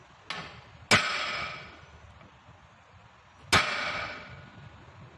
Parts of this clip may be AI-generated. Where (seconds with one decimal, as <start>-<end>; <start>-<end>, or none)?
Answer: none